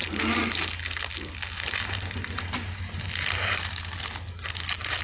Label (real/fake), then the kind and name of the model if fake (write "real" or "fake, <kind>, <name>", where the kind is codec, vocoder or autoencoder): real